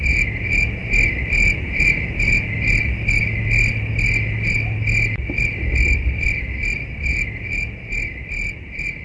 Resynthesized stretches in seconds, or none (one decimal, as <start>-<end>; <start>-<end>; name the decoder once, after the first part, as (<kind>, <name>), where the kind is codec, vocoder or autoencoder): none